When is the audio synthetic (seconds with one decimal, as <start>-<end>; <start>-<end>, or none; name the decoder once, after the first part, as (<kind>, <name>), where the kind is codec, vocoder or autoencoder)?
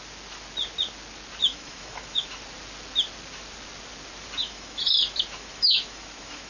1.4-2.4 (autoencoder, DAC-VAE); 4.4-6.5